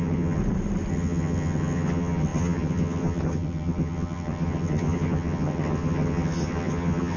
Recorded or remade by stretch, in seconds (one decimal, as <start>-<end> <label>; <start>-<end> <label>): 0.0-0.4 remade; 0.4-0.9 recorded; 0.9-7.2 remade